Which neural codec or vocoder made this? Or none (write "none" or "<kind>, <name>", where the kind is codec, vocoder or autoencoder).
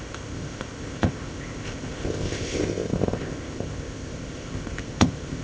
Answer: codec, ZipCodec